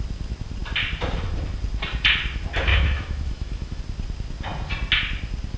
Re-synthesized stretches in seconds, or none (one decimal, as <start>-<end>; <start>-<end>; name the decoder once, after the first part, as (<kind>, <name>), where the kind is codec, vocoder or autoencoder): 2.7-3.8 (autoencoder, DAC-VAE)